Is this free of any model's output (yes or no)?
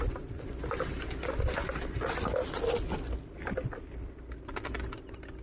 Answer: yes